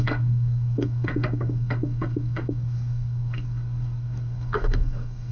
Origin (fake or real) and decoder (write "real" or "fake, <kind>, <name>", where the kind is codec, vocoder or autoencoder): fake, codec, SNAC